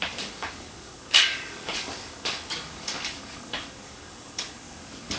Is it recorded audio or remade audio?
remade